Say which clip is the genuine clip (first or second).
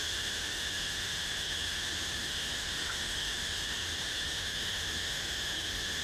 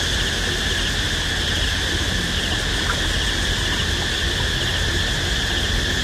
second